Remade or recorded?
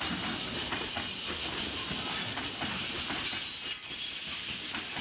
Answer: recorded